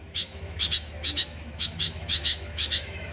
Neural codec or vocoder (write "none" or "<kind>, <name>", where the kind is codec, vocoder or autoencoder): autoencoder, DAC-VAE